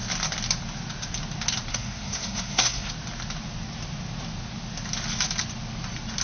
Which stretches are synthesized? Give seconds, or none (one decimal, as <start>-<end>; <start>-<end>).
1.7-2.9